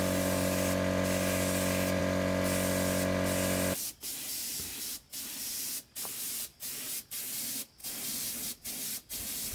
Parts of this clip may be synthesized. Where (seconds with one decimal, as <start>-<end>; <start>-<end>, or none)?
none